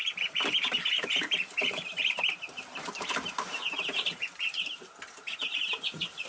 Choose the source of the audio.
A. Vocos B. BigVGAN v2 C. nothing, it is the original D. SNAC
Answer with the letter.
B